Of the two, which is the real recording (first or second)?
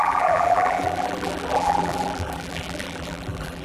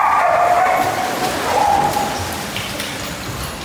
second